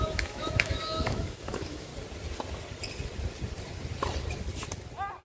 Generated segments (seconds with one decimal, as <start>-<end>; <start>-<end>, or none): 0.0-1.9